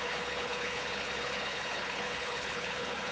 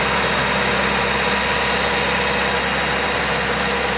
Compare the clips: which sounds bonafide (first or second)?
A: second